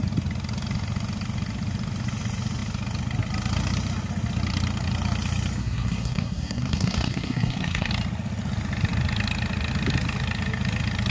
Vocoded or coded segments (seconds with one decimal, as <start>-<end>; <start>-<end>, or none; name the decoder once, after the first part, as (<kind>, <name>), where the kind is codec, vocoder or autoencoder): 5.6-7.9 (codec, SNAC)